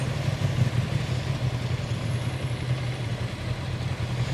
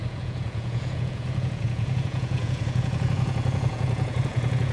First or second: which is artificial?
second